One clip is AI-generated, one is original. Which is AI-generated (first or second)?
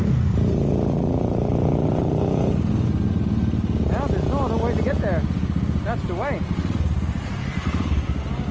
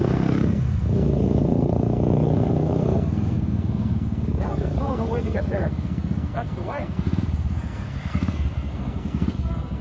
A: second